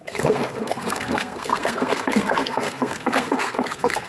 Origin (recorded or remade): remade